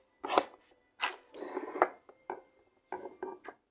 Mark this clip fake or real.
real